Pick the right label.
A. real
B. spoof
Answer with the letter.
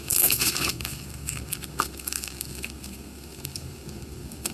B